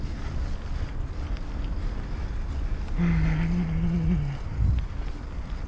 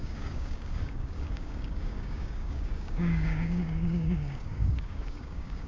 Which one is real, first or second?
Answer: first